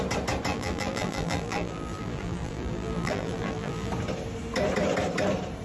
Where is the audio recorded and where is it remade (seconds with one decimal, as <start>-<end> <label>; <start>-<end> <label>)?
0.0-0.5 recorded; 0.5-3.9 remade; 3.9-5.6 recorded